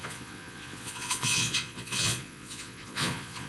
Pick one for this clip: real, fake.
fake